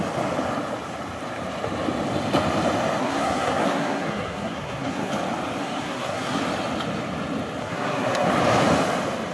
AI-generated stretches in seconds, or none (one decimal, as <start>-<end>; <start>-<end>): 3.0-5.1; 5.6-6.4; 7.6-8.3

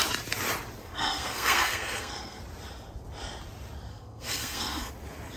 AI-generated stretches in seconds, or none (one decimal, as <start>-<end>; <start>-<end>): 0.8-2.4; 3.9-4.9

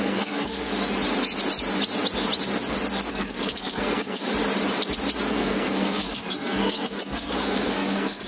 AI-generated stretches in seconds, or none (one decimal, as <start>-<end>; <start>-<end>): 0.0-0.7; 3.1-4.2; 5.3-8.3

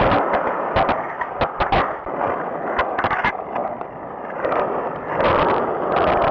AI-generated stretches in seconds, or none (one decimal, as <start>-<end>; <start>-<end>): none